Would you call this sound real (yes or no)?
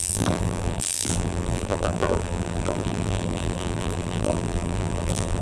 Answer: no